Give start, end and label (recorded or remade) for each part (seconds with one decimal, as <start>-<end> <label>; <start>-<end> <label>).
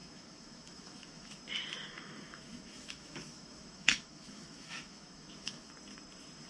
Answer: 0.0-1.4 remade; 1.4-1.8 recorded; 1.8-5.7 remade; 5.7-6.5 recorded